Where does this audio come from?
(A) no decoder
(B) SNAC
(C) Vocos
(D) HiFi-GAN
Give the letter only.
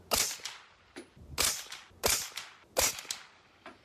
A